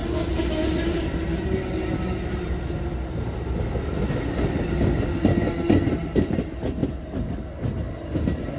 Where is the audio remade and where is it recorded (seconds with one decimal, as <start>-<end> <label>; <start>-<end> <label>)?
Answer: 0.0-8.6 recorded